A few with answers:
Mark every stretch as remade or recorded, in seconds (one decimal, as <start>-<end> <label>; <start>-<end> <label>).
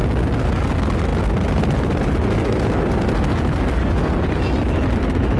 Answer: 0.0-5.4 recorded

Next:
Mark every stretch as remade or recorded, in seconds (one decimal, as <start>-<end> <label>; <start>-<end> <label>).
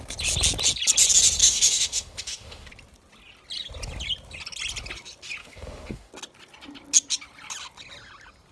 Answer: 0.0-1.4 recorded; 1.4-2.7 remade; 2.7-5.4 recorded; 5.4-6.1 remade; 6.1-8.5 recorded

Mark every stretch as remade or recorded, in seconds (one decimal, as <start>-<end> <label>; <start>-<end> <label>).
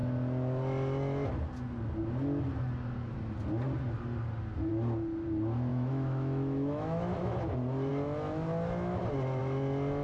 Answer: 0.0-5.7 recorded; 5.7-7.4 remade; 7.4-10.0 recorded